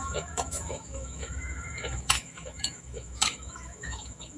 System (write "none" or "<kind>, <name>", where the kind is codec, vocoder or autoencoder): autoencoder, DAC-VAE